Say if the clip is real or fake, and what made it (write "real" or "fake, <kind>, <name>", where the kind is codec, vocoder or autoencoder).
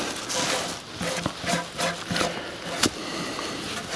real